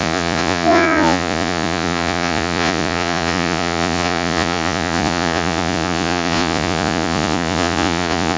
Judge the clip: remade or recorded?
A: remade